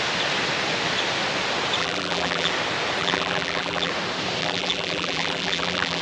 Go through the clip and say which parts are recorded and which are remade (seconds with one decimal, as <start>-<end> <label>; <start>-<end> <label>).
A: 0.0-1.8 recorded; 1.8-2.5 remade; 2.5-3.0 recorded; 3.0-3.9 remade; 3.9-4.4 recorded; 4.4-6.0 remade